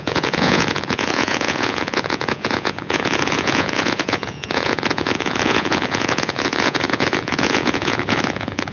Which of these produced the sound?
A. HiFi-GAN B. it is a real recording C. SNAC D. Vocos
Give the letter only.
D